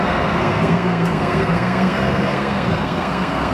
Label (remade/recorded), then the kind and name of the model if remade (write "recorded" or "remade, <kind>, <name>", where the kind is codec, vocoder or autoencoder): remade, codec, SNAC